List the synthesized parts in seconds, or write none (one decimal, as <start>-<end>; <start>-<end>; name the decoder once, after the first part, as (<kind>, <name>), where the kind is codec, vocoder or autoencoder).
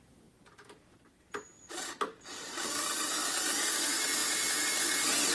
0.9-1.7 (vocoder, BigVGAN v2); 4.2-4.8